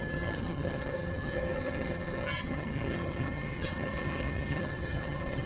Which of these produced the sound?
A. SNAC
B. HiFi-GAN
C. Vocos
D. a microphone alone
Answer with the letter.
B